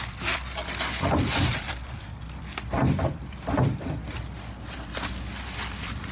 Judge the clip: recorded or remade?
remade